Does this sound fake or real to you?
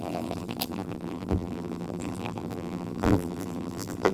fake